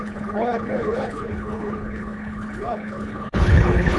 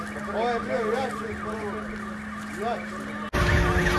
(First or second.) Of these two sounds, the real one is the second